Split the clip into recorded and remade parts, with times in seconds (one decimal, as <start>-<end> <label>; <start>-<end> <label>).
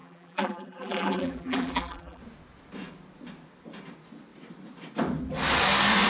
0.0-2.2 remade; 2.2-6.1 recorded